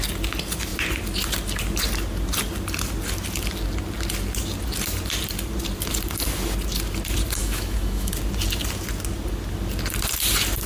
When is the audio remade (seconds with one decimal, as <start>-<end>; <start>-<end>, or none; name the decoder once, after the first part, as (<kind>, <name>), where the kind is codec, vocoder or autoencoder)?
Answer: 7.4-8.1 (autoencoder, DAC-VAE)